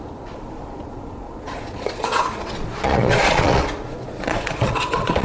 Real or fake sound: fake